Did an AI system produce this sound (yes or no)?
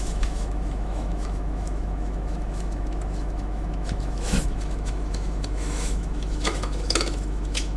yes